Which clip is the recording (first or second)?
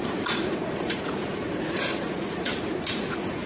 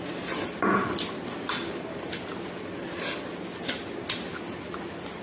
second